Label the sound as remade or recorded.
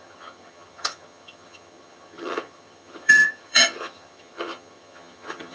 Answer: remade